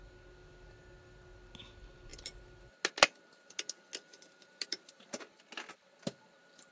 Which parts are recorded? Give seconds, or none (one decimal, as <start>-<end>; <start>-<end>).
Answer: 0.0-4.1; 5.0-6.7